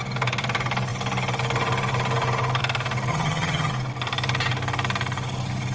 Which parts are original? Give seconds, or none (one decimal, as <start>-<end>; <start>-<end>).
0.0-3.1; 3.7-5.7